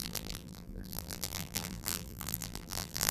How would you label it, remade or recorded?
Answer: remade